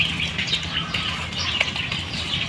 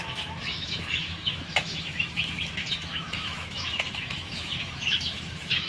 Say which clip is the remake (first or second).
second